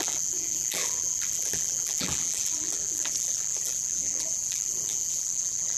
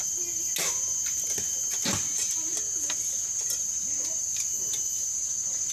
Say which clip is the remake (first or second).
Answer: first